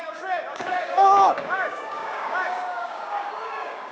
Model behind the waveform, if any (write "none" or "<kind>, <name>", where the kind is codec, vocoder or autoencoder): codec, DAC